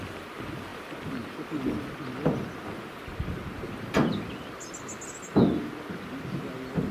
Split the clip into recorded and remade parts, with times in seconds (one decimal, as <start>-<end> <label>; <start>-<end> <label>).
0.0-6.9 recorded